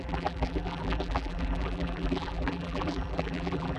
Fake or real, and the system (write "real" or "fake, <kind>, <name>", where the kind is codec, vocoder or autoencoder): fake, vocoder, BigVGAN v2